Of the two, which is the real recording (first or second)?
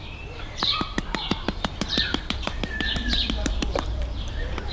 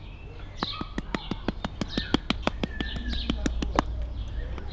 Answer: second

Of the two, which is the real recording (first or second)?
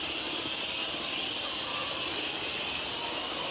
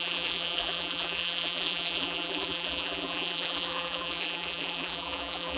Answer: first